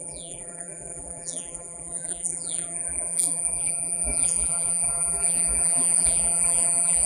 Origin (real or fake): fake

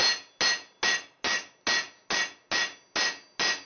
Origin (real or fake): real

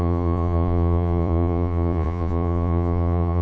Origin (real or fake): fake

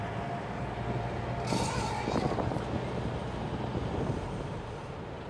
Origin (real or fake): real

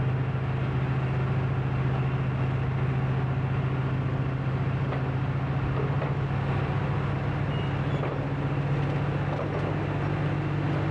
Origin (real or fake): real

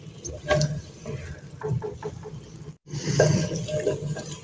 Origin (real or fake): real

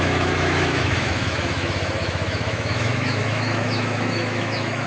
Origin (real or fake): fake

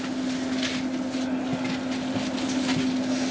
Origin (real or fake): real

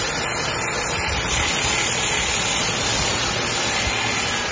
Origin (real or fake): real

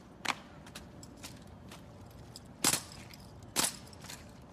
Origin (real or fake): real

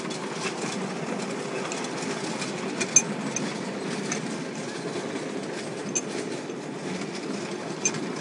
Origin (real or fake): real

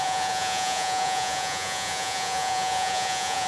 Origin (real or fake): fake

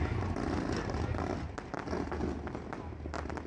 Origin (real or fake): real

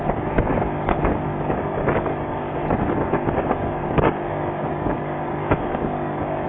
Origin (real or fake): fake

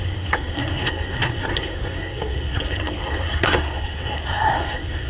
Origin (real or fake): fake